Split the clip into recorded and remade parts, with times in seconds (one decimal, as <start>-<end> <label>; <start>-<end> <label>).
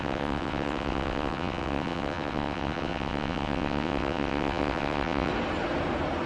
0.0-5.3 remade; 5.3-6.3 recorded